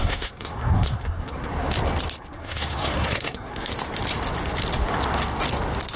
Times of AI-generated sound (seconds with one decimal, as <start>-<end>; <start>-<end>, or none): 0.0-1.5; 2.2-3.7